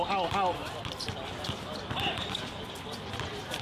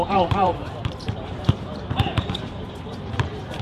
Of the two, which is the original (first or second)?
first